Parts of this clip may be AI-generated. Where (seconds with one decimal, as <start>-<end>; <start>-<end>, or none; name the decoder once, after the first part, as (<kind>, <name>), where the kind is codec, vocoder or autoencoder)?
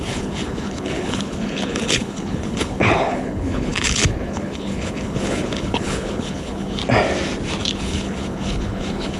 0.0-6.8 (codec, HILCodec); 7.6-9.2